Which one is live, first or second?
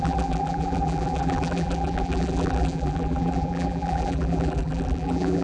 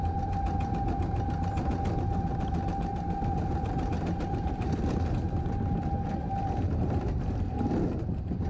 second